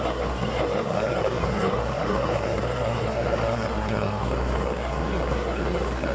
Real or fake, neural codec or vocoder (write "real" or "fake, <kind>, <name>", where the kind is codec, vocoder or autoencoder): fake, codec, SNAC